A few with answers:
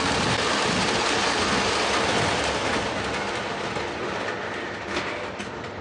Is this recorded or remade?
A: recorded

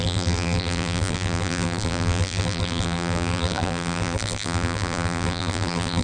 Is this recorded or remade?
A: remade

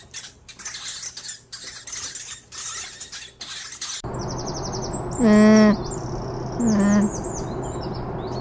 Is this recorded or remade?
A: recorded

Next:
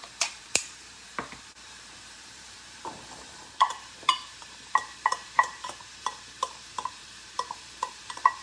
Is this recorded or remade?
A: remade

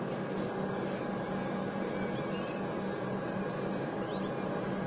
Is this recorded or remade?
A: recorded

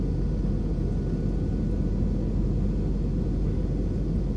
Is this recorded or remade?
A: recorded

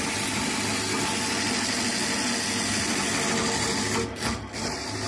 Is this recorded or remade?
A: recorded